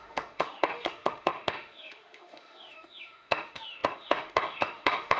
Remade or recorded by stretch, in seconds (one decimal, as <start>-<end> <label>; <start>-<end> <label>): 0.0-5.2 remade

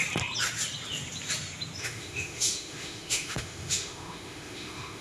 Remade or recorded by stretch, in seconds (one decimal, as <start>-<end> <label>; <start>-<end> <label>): 0.0-1.8 recorded; 1.8-5.0 remade

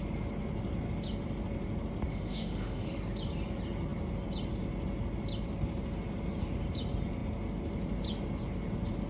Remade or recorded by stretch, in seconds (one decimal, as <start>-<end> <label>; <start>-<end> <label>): 0.0-2.1 recorded; 2.1-3.0 remade; 3.0-9.1 recorded

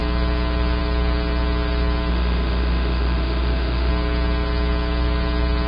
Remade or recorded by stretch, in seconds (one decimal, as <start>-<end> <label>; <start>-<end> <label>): 0.0-2.1 recorded; 2.1-3.9 remade; 3.9-5.7 recorded

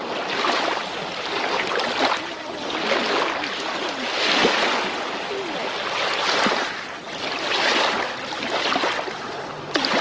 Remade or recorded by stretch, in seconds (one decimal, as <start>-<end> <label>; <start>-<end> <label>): 0.0-10.0 recorded

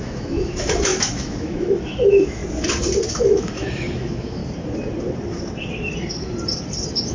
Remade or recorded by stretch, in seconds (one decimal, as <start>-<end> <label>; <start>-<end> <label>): 0.0-2.4 remade; 2.4-3.1 recorded; 3.1-4.4 remade; 4.4-7.1 recorded